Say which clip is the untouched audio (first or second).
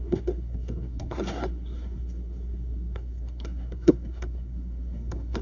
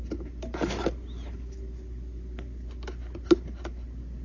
second